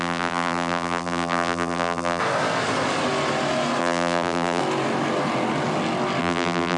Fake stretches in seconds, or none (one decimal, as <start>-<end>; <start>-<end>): 0.0-2.2; 3.8-4.6; 6.2-6.8